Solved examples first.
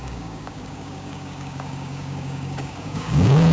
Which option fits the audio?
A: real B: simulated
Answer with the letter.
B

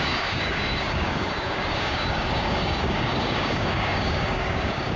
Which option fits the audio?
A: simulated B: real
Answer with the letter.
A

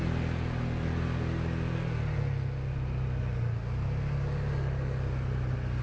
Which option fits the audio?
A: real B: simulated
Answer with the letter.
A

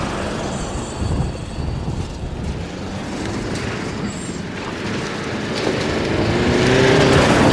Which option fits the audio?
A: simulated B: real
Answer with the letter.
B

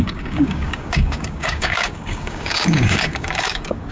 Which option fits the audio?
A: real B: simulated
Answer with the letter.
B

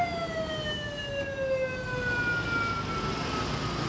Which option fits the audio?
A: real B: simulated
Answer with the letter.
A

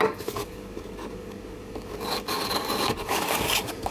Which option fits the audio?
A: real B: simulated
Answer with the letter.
B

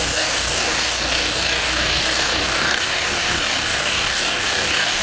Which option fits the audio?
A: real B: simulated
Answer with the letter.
B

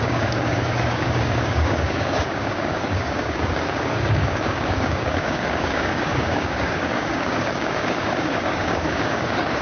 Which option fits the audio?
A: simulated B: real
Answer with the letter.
A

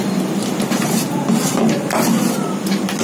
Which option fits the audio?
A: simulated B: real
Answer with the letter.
B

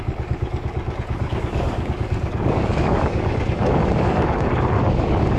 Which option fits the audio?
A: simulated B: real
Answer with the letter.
A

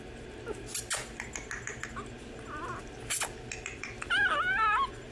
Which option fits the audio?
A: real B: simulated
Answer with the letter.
A